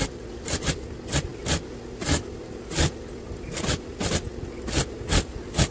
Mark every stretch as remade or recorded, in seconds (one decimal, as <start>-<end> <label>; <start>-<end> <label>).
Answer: 0.0-5.7 recorded